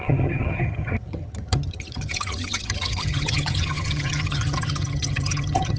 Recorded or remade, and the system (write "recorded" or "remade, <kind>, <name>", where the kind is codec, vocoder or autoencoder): remade, vocoder, HiFi-GAN